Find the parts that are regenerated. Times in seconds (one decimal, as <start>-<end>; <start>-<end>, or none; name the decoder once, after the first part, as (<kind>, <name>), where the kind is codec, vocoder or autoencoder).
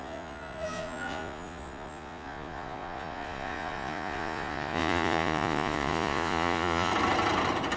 0.0-6.9 (vocoder, Vocos)